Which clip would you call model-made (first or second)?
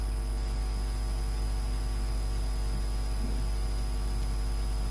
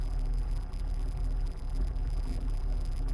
second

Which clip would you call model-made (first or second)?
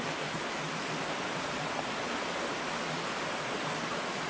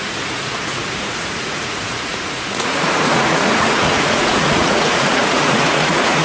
second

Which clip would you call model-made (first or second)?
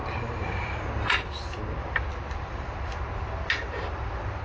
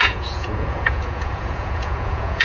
second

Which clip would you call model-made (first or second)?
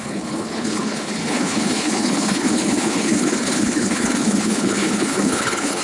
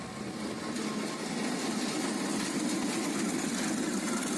first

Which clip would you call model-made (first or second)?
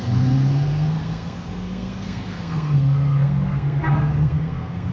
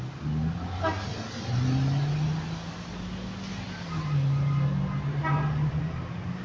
first